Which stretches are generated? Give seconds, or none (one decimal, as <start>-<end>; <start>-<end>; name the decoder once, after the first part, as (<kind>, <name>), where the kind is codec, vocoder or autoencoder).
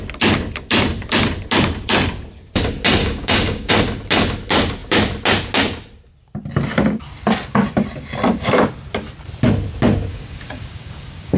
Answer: 3.0-3.7 (codec, DAC); 10.1-11.4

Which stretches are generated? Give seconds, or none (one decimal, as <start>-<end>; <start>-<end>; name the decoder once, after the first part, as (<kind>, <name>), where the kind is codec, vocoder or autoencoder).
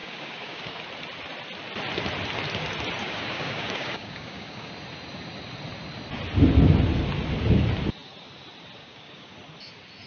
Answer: 0.0-0.8 (codec, DAC); 3.0-4.7; 8.8-9.3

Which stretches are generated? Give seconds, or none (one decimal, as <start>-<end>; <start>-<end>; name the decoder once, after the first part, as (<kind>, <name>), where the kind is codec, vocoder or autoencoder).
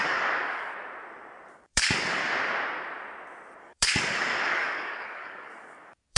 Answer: 0.0-0.7 (codec, DAC); 1.5-2.2; 3.6-6.2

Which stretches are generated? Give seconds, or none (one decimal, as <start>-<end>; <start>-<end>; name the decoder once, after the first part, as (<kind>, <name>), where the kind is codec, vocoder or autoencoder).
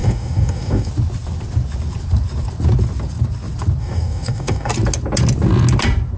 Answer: 0.0-0.9 (codec, DAC); 3.8-4.7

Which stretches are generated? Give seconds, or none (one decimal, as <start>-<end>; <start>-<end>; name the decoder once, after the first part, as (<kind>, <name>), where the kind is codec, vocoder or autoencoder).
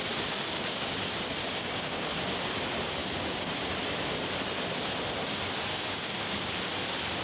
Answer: 1.4-2.0 (codec, DAC); 3.0-3.7; 5.7-6.5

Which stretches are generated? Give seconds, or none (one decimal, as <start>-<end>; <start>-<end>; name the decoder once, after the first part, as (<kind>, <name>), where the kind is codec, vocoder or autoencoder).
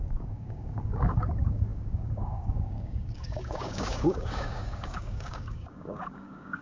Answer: 0.0-6.6 (codec, DAC)